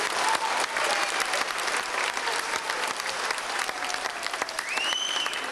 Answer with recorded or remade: remade